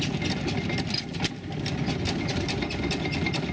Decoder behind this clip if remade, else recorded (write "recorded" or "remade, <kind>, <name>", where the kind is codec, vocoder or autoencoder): recorded